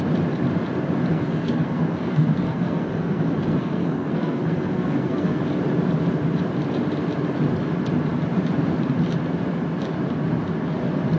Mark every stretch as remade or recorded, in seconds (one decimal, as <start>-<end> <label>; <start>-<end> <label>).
0.0-1.1 recorded; 1.1-5.4 remade; 5.4-11.2 recorded